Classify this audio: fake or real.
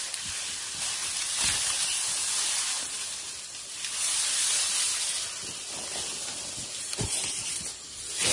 real